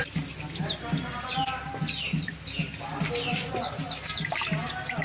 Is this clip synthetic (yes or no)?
no